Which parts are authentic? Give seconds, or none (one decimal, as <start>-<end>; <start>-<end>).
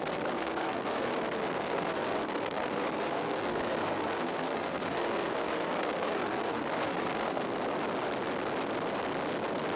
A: 7.5-9.8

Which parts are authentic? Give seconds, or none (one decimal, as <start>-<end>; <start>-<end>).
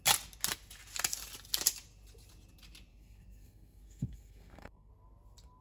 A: 0.0-2.9; 4.9-5.6